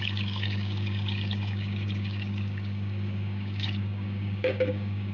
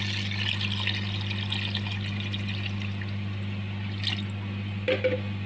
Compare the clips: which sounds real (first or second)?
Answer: second